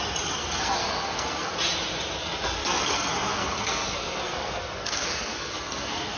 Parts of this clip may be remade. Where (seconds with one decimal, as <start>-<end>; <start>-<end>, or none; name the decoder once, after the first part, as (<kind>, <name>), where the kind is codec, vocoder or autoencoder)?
0.4-1.5 (codec, SNAC); 2.2-6.2